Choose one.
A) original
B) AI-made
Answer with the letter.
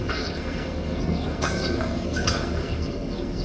B